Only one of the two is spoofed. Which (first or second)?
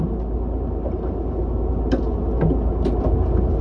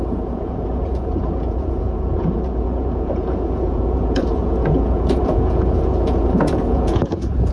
second